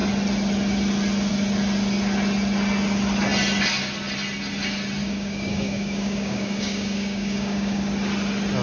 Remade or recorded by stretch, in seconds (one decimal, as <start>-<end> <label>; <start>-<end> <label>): 0.0-5.0 recorded; 5.0-7.8 remade; 7.8-8.6 recorded